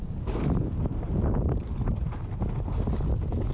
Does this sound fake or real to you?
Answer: real